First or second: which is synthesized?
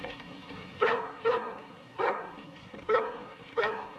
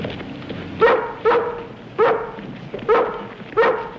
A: first